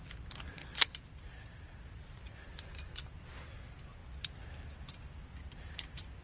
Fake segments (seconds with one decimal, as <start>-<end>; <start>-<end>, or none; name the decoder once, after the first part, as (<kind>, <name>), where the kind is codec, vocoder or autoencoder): none